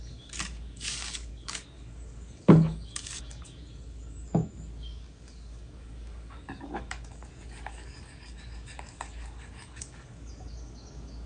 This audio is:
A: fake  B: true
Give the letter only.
A